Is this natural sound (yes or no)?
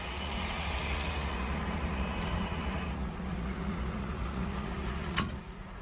no